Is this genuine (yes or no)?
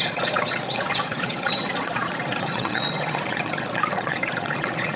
no